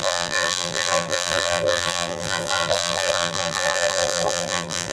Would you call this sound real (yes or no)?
no